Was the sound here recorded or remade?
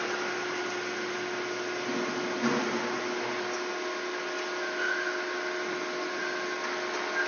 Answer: recorded